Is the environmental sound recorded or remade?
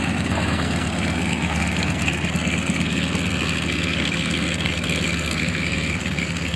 remade